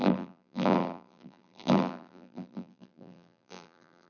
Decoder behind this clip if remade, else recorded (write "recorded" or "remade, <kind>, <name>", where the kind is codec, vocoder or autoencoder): remade, vocoder, BigVGAN v2